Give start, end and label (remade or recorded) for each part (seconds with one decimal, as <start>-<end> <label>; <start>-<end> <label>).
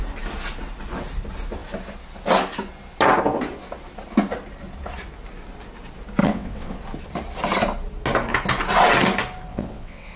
0.0-6.2 recorded; 6.2-6.8 remade; 6.8-9.5 recorded; 9.5-10.2 remade